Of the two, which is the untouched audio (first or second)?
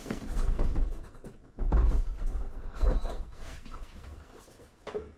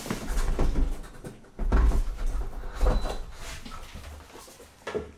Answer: second